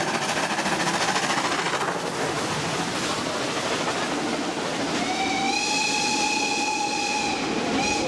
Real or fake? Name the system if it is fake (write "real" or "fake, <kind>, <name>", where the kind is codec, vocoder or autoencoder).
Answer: real